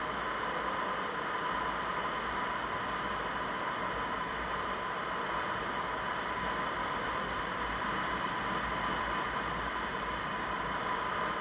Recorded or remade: recorded